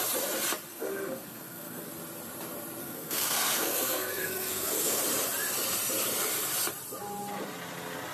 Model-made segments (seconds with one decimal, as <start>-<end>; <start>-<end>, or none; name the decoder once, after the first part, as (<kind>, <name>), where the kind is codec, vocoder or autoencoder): 0.7-1.9 (codec, SNAC); 2.8-5.0